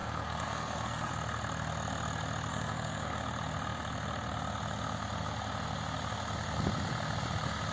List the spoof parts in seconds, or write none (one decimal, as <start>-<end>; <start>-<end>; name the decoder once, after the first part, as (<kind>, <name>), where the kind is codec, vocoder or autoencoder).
0.0-1.1 (codec, SNAC); 2.5-3.2